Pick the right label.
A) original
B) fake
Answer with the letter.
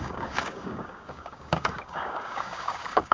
B